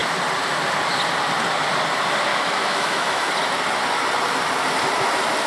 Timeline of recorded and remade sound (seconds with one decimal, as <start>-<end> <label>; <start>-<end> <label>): 0.0-2.3 recorded; 2.3-3.3 remade; 3.3-5.5 recorded